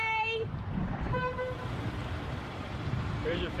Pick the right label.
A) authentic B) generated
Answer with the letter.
B